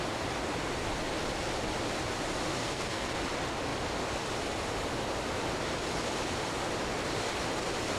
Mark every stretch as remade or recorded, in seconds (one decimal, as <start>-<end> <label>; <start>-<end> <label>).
0.0-2.5 recorded; 2.5-3.1 remade; 3.1-8.0 recorded